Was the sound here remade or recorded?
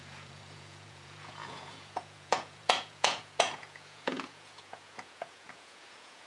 remade